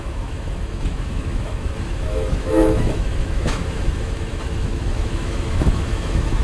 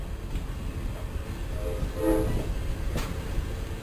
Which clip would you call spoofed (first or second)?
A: first